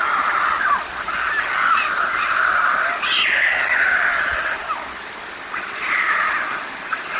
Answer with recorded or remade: recorded